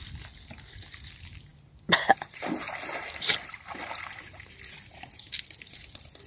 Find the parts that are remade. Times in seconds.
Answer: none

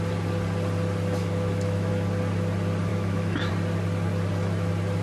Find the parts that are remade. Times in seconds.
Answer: 1.2-1.9 (autoencoder, DAC-VAE); 2.9-3.5

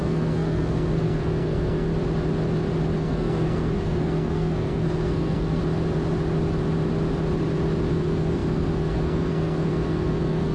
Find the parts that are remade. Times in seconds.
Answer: 0.0-1.9 (codec, SNAC); 3.0-5.6; 7.9-10.5

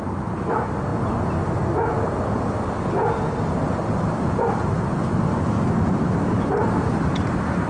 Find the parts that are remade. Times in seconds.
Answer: 5.3-6.5 (autoencoder, DAC-VAE)

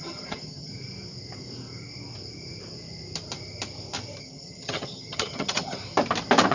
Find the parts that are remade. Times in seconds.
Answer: 0.0-0.7 (vocoder, HiFi-GAN); 4.2-5.8

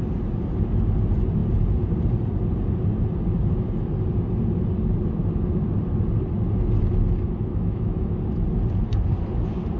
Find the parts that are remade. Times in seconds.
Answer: 7.5-8.1 (autoencoder, DAC-VAE)